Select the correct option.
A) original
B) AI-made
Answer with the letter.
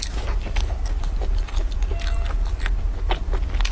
A